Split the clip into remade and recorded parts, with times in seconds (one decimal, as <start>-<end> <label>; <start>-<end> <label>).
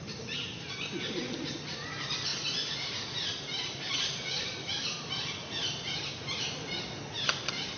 0.0-7.8 recorded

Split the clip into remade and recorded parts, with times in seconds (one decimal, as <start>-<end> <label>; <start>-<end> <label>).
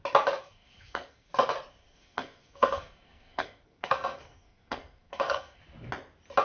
0.0-0.4 recorded; 0.4-1.3 remade; 1.3-1.8 recorded; 1.8-5.6 remade; 5.6-6.4 recorded